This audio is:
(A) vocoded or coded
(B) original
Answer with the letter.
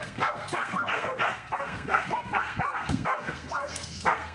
A